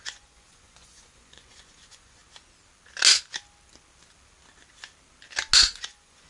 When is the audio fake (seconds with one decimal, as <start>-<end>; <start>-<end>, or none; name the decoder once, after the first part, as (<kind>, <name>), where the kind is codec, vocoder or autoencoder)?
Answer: 0.0-2.2 (vocoder, Vocos); 5.6-6.3